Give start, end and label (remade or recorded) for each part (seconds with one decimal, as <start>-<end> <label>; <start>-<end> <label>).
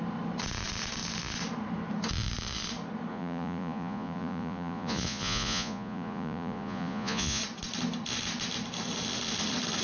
0.0-3.1 recorded; 3.1-7.4 remade; 7.4-9.8 recorded